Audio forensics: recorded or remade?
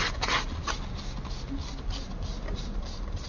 recorded